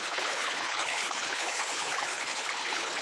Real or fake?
fake